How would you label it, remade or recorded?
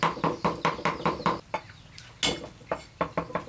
recorded